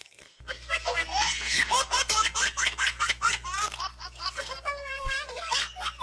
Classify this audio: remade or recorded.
remade